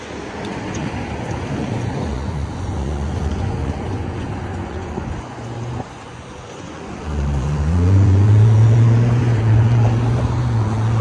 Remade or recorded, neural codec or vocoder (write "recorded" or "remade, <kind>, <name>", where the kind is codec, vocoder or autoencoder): remade, vocoder, Vocos